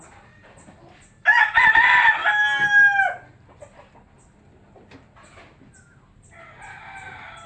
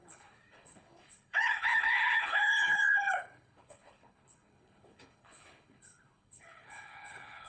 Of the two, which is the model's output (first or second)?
second